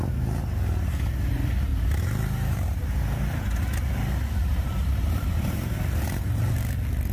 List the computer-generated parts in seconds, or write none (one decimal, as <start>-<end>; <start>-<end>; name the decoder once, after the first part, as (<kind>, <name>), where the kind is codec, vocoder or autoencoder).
1.7-3.5 (vocoder, BigVGAN v2); 4.4-6.4